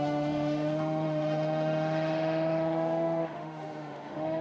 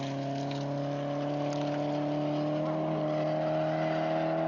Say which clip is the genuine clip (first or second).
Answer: second